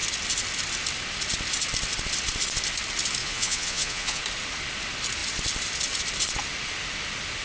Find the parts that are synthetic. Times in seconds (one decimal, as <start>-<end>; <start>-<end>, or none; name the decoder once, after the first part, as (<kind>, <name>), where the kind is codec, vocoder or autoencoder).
3.2-4.2 (vocoder, Vocos)